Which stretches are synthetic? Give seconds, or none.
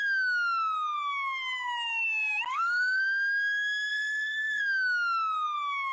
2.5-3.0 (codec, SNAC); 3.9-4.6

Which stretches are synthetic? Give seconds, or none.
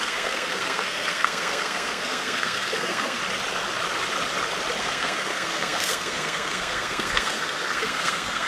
0.0-3.2 (codec, SNAC); 4.8-8.5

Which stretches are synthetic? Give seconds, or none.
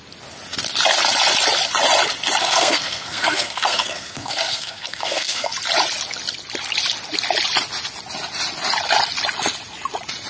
2.4-5.5 (codec, SNAC)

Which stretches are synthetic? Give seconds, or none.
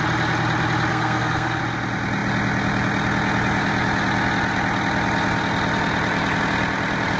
0.9-1.6 (codec, SNAC)